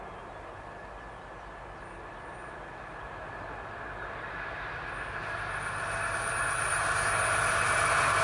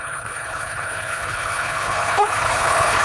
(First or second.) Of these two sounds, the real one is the first